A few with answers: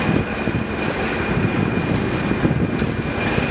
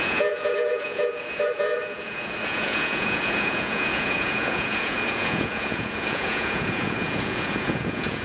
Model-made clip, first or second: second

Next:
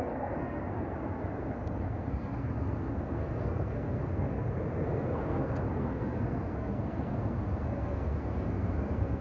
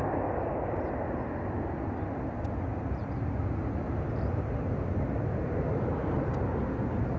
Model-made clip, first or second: first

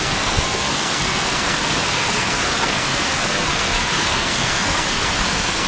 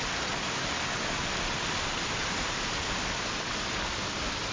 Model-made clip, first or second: first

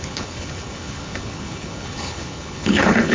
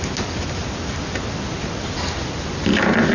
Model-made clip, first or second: first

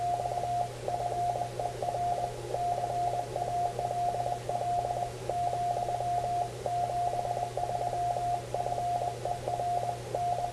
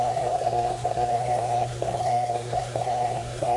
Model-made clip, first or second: second